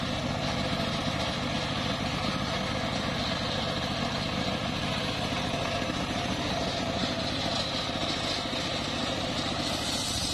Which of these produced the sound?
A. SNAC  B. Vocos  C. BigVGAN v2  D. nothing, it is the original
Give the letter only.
D